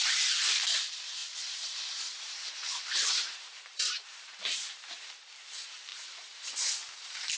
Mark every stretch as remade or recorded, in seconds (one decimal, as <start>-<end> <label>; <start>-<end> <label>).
0.0-7.4 remade